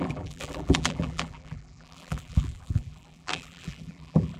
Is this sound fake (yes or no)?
yes